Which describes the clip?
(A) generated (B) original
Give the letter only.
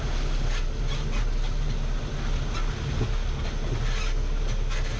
B